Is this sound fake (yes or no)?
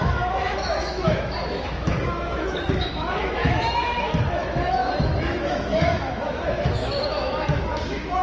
yes